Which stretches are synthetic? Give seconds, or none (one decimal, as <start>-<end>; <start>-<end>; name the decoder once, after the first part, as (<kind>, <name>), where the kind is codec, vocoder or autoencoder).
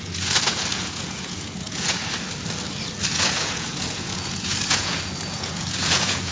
0.0-2.0 (vocoder, Vocos); 3.1-6.3